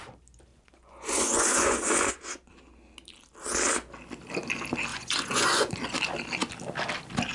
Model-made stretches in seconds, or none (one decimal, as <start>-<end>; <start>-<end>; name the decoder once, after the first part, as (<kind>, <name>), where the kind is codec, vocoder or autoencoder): 0.5-2.1 (vocoder, Vocos); 4.9-5.7